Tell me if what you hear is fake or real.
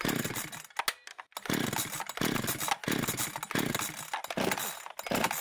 real